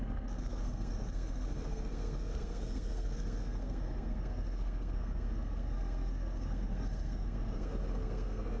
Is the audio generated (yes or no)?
yes